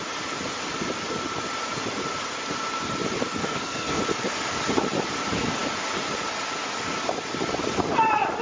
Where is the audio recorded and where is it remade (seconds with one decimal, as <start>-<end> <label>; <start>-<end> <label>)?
0.0-3.4 recorded; 3.4-4.0 remade; 4.0-8.4 recorded